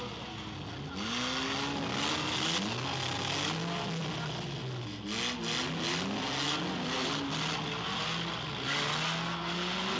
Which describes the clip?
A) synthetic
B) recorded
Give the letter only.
B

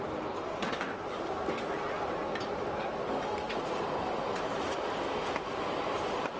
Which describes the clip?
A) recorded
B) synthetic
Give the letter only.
A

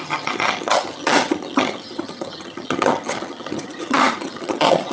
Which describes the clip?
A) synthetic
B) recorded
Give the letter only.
A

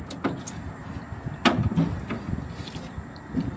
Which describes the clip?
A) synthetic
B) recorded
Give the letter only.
B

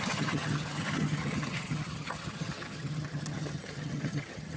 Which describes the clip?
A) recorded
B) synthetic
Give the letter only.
B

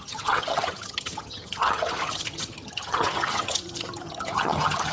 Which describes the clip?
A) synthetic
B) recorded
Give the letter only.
A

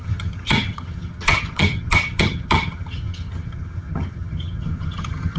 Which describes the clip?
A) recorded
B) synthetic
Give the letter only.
B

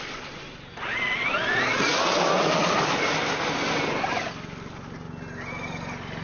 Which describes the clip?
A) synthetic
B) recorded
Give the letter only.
B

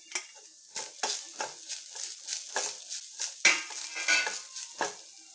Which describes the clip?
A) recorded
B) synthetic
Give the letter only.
A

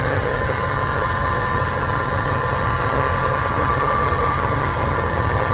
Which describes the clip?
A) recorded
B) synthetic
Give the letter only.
B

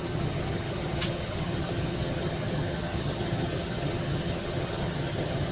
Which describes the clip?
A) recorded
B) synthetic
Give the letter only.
B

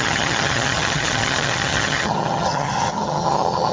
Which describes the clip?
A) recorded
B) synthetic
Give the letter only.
B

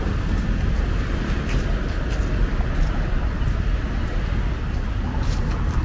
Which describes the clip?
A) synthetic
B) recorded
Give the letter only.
B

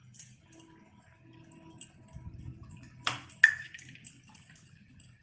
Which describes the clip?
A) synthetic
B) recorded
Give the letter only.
B